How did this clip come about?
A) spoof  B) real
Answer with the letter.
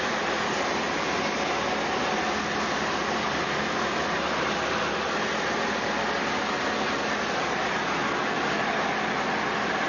B